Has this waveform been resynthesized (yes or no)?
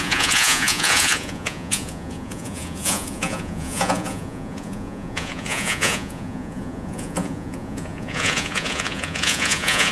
yes